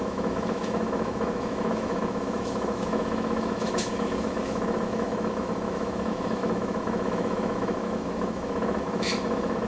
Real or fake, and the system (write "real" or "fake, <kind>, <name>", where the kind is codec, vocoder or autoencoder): fake, autoencoder, DAC-VAE